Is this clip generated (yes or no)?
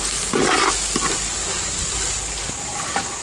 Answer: no